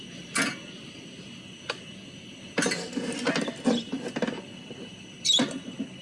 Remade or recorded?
recorded